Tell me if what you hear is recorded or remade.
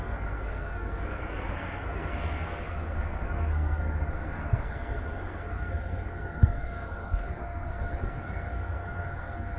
remade